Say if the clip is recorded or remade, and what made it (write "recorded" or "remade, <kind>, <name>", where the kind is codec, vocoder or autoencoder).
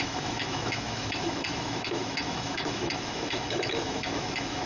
remade, autoencoder, DAC-VAE